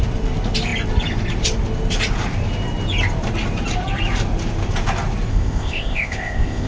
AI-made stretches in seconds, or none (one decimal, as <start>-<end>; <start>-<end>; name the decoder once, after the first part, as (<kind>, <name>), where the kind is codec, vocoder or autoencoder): 5.3-6.7 (codec, ZipCodec)